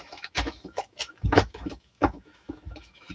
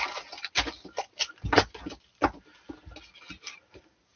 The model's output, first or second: first